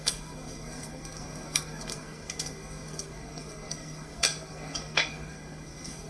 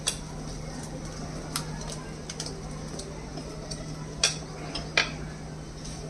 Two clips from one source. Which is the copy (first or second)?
first